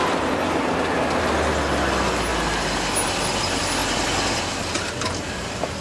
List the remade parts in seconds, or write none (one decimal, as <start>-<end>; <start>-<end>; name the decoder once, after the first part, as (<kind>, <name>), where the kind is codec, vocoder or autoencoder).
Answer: none